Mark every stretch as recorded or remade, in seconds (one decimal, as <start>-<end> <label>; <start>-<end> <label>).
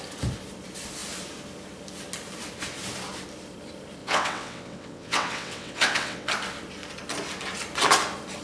0.0-4.0 recorded; 4.0-6.3 remade; 6.3-8.4 recorded